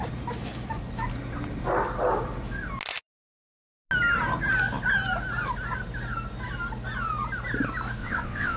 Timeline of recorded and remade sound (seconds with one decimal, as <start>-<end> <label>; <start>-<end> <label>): 0.0-8.0 recorded; 8.0-8.6 remade